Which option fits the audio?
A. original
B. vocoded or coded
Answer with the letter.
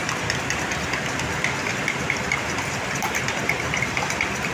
A